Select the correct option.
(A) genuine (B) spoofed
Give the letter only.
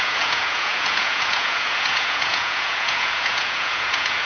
B